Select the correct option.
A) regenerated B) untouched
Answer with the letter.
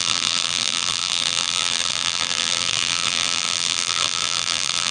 A